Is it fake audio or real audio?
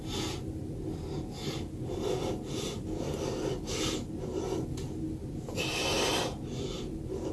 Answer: real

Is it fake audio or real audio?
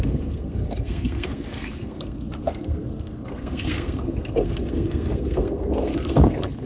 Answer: fake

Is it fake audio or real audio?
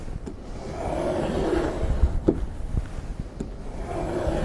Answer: real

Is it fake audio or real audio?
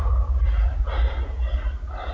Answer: real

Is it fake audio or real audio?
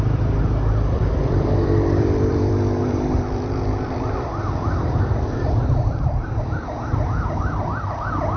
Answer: fake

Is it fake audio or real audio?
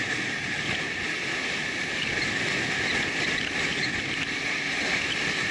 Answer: real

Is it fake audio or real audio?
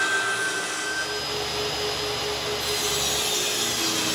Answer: real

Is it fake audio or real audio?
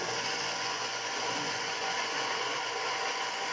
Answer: fake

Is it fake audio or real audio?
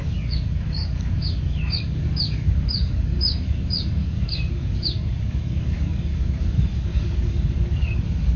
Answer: fake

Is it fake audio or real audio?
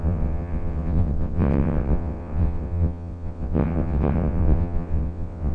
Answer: fake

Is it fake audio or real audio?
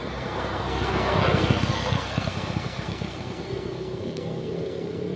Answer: fake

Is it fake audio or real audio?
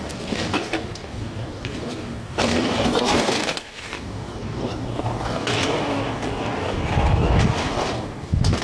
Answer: fake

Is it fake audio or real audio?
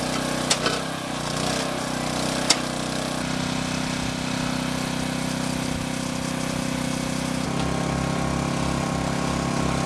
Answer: real